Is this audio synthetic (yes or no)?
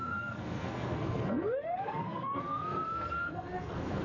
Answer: yes